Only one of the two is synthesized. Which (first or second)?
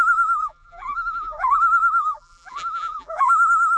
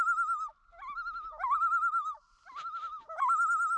first